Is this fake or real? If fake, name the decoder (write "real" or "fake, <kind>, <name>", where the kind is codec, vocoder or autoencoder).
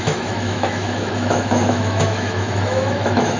fake, autoencoder, DAC-VAE